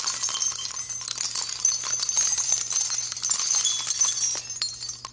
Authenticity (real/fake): real